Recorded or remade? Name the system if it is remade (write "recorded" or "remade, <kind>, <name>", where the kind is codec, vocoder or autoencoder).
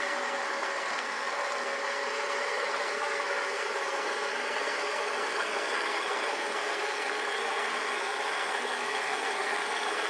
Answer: remade, codec, SNAC